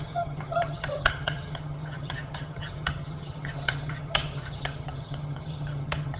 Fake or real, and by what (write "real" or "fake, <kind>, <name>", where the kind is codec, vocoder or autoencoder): fake, vocoder, HiFi-GAN